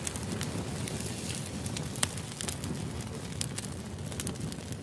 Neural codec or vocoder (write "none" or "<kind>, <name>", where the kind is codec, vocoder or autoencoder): none